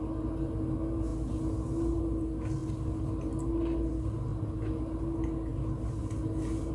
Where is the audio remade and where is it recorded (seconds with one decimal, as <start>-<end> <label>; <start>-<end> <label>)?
0.0-6.7 recorded